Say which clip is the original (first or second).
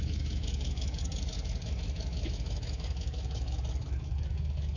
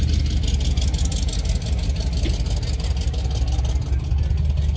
second